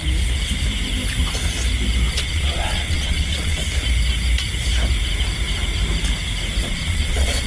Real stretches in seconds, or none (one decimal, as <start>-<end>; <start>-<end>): 0.0-2.1; 3.6-6.6